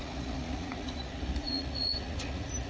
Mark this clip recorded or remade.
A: remade